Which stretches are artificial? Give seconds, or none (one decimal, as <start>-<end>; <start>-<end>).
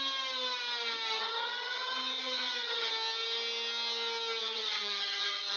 1.2-2.9; 4.4-5.6